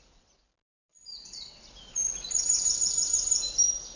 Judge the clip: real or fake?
real